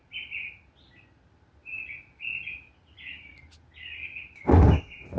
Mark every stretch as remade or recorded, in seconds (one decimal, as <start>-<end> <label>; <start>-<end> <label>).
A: 0.0-5.2 recorded